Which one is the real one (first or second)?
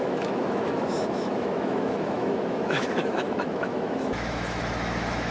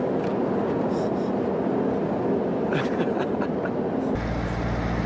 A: second